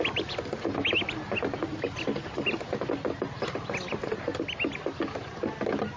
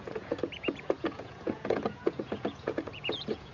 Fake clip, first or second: second